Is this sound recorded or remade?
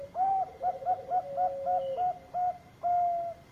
recorded